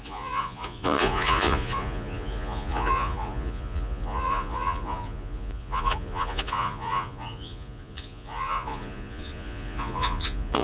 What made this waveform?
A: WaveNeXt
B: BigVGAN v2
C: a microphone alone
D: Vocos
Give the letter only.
D